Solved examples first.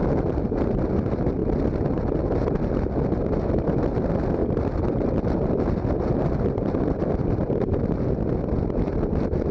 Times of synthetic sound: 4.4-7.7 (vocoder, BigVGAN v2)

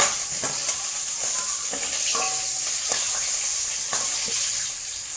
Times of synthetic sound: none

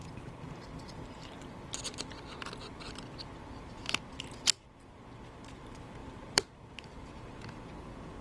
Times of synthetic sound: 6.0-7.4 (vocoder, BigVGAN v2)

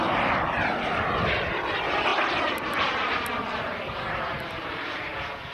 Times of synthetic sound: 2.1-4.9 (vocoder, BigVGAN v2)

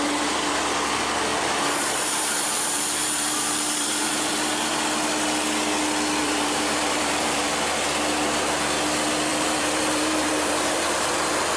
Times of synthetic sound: 1.3-4.3 (vocoder, BigVGAN v2); 6.2-7.4; 9.3-11.1